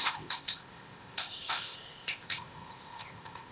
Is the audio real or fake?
fake